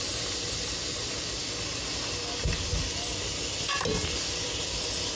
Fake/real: real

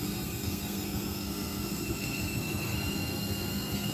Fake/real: fake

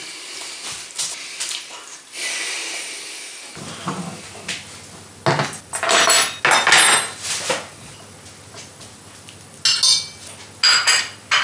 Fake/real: real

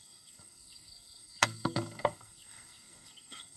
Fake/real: fake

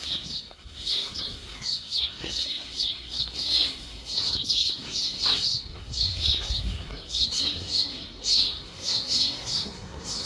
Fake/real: fake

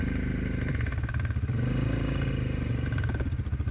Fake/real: real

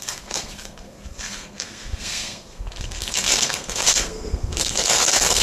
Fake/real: fake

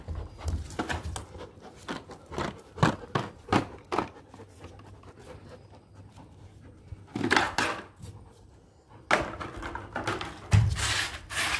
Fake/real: real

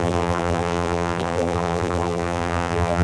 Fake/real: fake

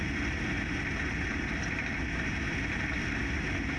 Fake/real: real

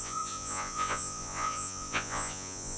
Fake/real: fake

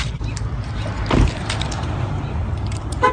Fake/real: fake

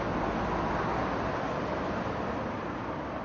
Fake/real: real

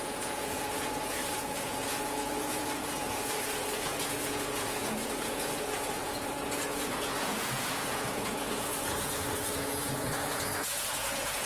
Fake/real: fake